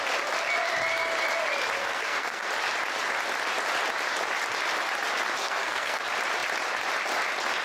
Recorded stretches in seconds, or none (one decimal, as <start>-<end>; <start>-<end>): 0.0-1.8; 2.5-5.4; 6.0-7.6